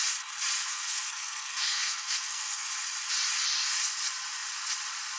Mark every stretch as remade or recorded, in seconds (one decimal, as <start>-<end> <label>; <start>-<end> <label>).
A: 0.0-0.6 recorded; 0.6-2.7 remade; 2.7-5.2 recorded